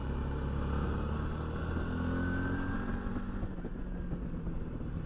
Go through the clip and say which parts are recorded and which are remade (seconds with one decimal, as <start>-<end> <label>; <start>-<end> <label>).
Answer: 0.0-5.1 recorded